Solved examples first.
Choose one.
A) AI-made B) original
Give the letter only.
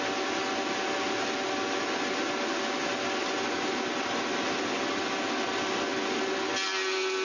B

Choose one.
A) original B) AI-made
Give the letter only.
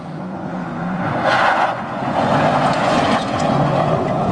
B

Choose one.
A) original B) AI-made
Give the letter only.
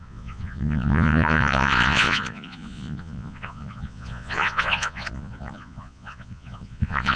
B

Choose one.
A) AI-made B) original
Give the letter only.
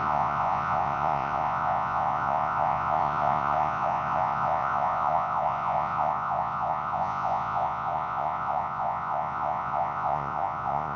A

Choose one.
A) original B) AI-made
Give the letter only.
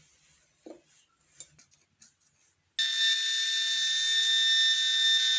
A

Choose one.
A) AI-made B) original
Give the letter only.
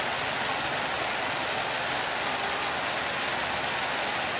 B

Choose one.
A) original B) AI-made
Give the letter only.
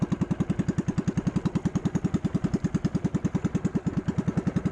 A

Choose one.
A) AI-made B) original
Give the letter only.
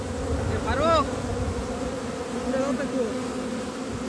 B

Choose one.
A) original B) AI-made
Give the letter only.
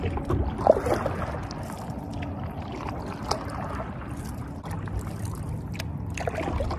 A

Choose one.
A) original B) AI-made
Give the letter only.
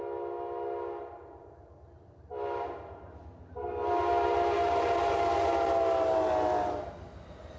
A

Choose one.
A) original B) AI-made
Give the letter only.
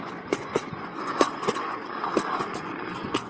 B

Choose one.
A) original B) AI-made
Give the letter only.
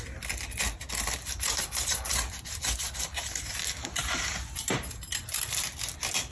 A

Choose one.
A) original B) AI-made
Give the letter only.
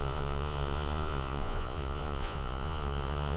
B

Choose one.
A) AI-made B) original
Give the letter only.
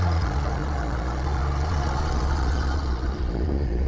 A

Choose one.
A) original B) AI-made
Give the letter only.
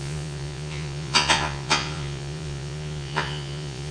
B